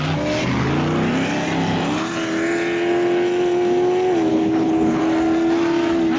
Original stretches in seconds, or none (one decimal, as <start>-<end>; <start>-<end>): 0.0-4.3; 5.0-6.2